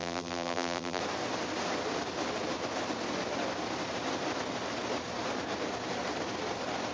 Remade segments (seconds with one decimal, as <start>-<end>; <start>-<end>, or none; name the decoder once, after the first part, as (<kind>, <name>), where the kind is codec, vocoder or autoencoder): 0.0-1.0 (vocoder, BigVGAN v2)